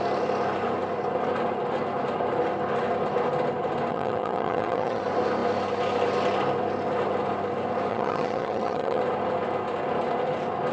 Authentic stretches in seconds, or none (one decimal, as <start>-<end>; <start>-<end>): 0.0-3.9; 5.0-7.9; 9.0-10.7